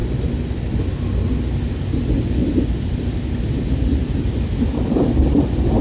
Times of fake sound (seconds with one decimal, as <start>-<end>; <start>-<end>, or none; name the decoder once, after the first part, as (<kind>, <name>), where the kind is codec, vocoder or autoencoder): 2.4-5.8 (vocoder, BigVGAN v2)